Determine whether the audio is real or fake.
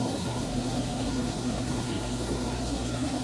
fake